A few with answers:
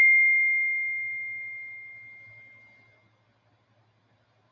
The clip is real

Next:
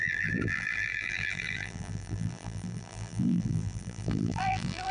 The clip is fake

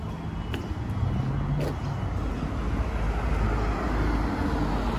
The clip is real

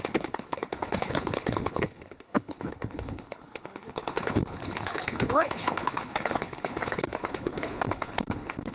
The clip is fake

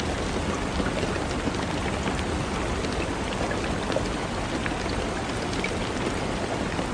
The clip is real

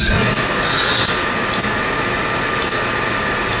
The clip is real